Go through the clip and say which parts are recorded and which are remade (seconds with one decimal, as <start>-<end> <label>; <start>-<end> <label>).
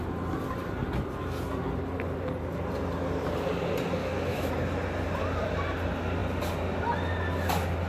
0.0-4.0 recorded; 4.0-4.5 remade; 4.5-7.9 recorded